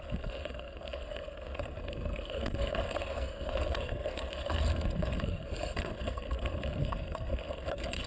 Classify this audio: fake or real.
fake